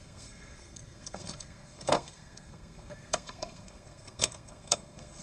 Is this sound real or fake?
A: fake